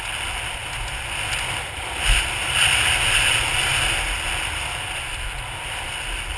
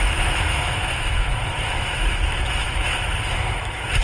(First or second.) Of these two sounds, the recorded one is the first